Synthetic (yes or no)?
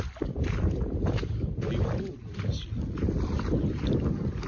no